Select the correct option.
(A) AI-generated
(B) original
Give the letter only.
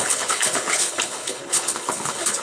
A